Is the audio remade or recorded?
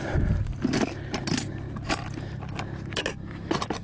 recorded